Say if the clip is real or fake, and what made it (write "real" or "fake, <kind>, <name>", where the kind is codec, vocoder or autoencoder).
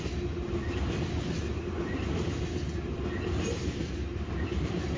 real